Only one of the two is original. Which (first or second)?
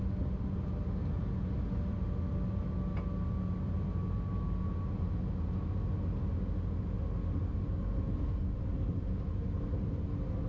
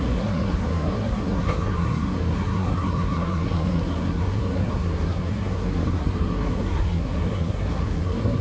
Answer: first